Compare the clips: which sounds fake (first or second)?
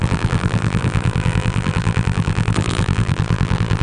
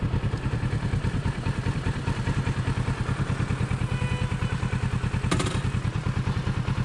first